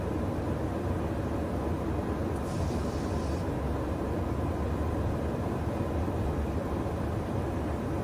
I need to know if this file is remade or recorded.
recorded